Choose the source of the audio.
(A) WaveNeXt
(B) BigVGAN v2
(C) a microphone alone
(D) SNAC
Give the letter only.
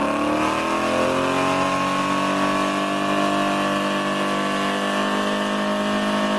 C